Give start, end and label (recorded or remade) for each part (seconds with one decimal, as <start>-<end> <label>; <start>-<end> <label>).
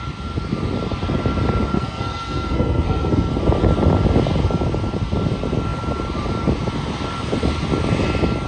0.0-1.7 recorded; 1.7-3.3 remade; 3.3-8.5 recorded